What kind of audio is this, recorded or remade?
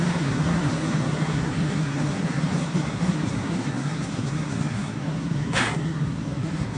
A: remade